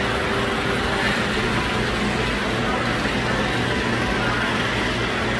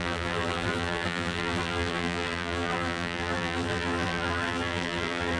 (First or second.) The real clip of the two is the first